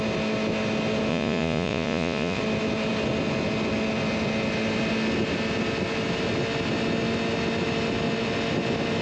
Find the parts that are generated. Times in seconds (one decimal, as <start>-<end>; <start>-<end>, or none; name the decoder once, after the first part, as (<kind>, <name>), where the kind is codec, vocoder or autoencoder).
1.1-2.4 (vocoder, Vocos)